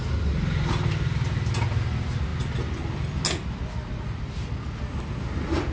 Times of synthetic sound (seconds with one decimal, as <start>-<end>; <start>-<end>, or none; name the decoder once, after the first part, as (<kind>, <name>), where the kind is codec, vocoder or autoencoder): none